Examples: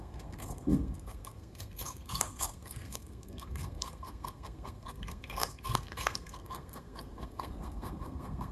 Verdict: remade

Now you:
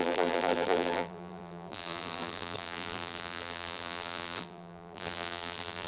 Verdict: remade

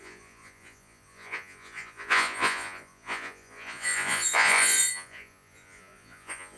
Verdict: remade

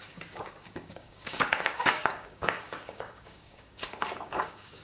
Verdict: remade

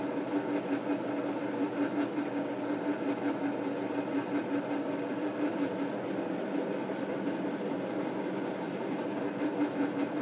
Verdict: remade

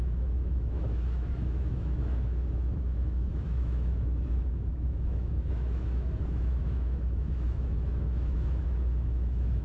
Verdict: remade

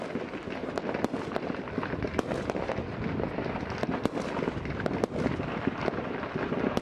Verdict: recorded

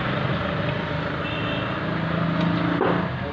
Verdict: recorded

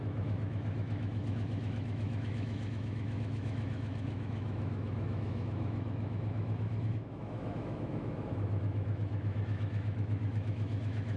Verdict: remade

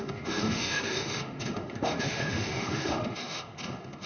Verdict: remade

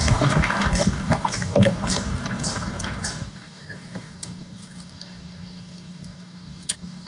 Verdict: remade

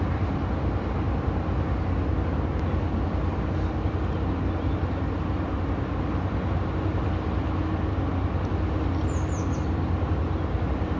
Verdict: recorded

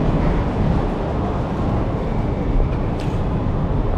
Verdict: recorded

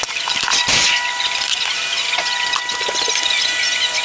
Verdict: recorded